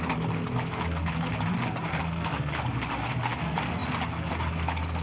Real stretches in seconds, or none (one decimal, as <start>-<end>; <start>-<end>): 0.0-1.9; 2.5-5.0